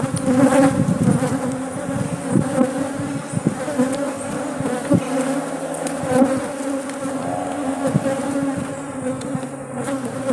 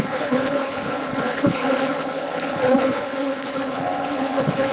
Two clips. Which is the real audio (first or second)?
first